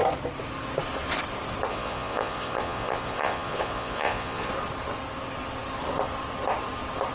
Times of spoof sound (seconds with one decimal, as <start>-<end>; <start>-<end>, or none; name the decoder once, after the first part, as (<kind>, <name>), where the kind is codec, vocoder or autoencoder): 1.7-4.5 (vocoder, Vocos)